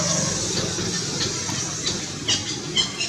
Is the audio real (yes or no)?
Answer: yes